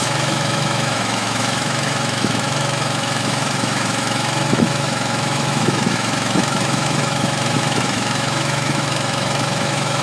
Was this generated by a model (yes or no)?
yes